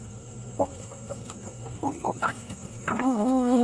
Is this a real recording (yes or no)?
no